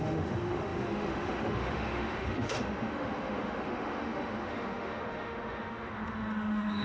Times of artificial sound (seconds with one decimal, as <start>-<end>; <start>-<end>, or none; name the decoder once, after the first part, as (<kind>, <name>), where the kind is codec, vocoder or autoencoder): 0.0-6.8 (autoencoder, DAC-VAE)